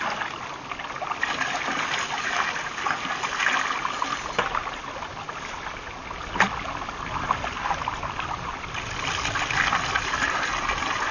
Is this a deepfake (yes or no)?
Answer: no